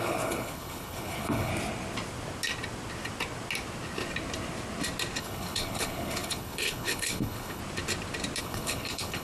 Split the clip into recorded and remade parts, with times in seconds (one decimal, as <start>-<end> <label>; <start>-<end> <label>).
0.0-1.5 remade; 1.5-5.2 recorded; 5.2-7.6 remade; 7.6-8.4 recorded; 8.4-9.2 remade